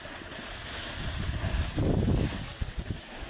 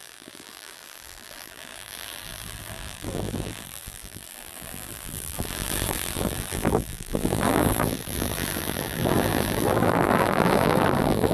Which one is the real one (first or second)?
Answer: first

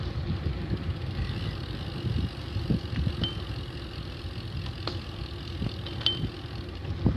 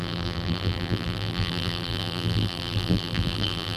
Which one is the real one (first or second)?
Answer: first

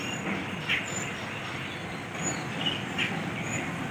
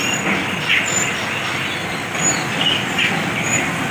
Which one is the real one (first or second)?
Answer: second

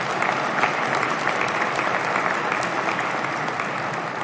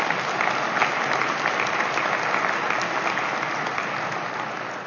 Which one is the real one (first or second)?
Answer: second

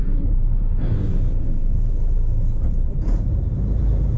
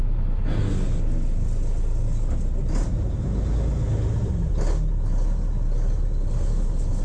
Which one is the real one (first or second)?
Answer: second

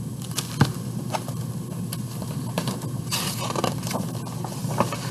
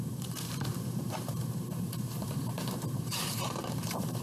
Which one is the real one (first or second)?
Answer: first